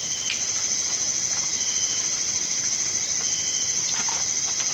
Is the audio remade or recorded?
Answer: recorded